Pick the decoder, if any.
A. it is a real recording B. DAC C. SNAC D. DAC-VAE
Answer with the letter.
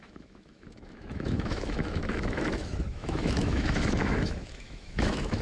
D